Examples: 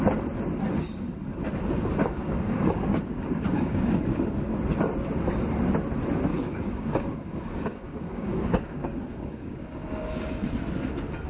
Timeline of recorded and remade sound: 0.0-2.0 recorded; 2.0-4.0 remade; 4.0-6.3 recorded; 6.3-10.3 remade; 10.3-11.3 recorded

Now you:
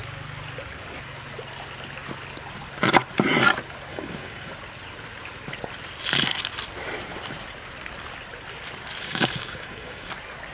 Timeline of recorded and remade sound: 0.0-3.9 recorded; 3.9-4.5 remade; 4.5-9.0 recorded; 9.0-10.1 remade; 10.1-10.5 recorded

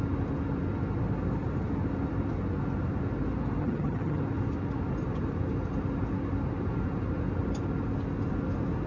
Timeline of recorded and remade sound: 0.0-3.6 recorded; 3.6-4.2 remade; 4.2-8.9 recorded

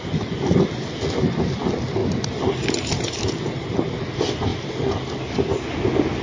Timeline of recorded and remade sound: 0.0-6.2 recorded

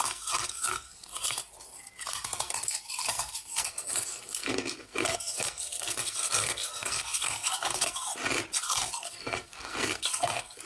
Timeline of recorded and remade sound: 0.0-1.4 remade; 1.4-2.1 recorded; 2.1-8.1 remade; 8.1-8.6 recorded; 8.6-10.7 remade